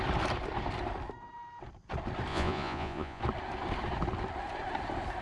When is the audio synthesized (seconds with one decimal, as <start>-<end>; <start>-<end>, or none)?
2.3-3.2